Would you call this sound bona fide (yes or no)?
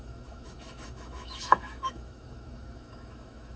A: no